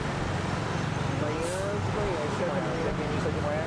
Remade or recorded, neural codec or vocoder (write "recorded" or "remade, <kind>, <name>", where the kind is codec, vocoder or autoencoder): recorded